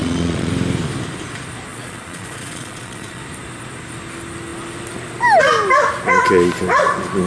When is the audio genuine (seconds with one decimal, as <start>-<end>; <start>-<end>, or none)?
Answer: 0.5-1.7; 3.2-7.3